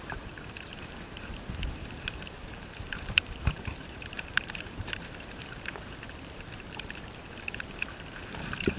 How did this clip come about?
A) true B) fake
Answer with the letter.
B